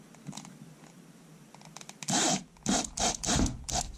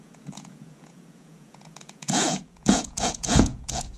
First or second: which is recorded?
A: first